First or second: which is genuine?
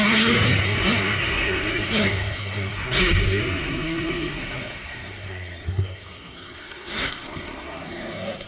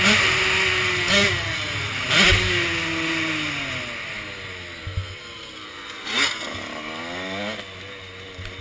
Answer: second